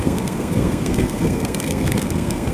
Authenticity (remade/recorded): remade